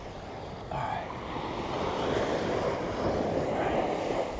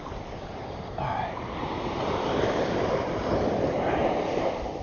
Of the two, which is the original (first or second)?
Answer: first